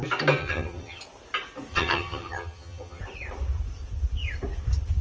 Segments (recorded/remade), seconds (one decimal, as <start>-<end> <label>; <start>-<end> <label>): 0.0-0.4 recorded; 0.4-1.0 remade; 1.0-1.7 recorded; 1.7-3.0 remade; 3.0-5.0 recorded